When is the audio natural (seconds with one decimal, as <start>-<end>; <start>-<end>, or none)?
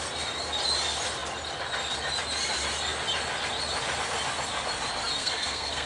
0.0-5.2